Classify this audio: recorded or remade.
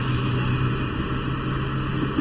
recorded